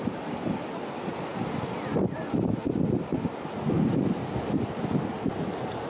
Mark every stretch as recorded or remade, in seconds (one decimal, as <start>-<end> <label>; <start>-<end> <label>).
0.0-5.9 recorded